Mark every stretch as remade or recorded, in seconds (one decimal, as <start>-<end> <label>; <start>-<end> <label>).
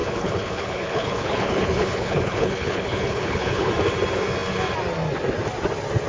0.0-3.7 remade; 3.7-6.1 recorded